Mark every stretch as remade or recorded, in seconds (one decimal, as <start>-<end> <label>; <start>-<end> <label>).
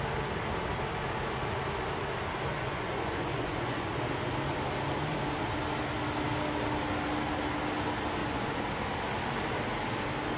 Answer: 0.0-2.5 recorded; 2.5-4.0 remade; 4.0-8.2 recorded; 8.2-8.7 remade; 8.7-10.4 recorded